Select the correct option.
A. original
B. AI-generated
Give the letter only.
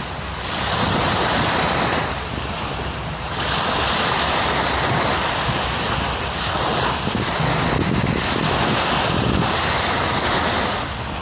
A